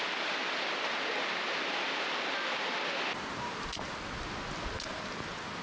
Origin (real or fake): real